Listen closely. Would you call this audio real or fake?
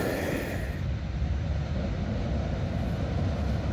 real